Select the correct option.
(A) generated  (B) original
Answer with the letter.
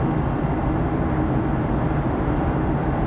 B